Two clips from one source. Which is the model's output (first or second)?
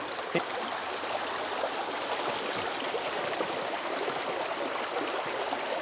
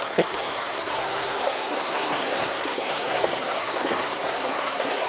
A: second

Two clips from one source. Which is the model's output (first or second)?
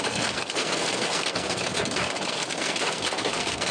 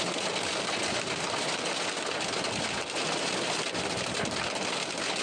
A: first